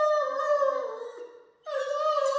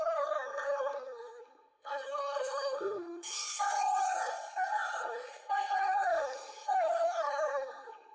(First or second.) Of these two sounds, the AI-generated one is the second